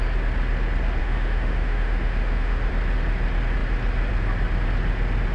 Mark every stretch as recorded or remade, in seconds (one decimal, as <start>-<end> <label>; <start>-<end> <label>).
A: 0.0-1.0 recorded; 1.0-2.7 remade; 2.7-5.3 recorded